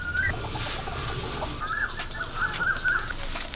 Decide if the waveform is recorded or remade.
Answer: recorded